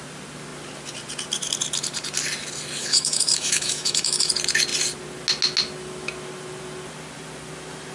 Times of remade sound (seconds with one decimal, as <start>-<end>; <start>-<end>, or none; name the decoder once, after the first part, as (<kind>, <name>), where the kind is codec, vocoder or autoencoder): 2.8-4.3 (autoencoder, DAC-VAE)